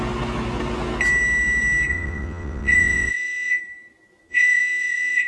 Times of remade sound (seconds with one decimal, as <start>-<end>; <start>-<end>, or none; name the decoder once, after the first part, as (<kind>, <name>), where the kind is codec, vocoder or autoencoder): 1.9-3.6 (vocoder, WaveNeXt); 4.3-5.3